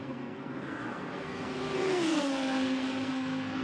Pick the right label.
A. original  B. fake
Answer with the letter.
B